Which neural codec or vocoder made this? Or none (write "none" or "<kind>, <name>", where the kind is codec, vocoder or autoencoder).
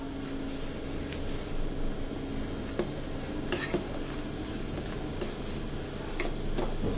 none